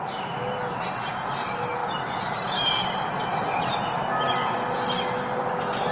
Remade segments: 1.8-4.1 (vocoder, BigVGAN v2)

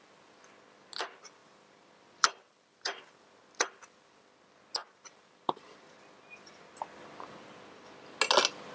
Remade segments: 1.4-3.4 (vocoder, BigVGAN v2); 4.8-6.8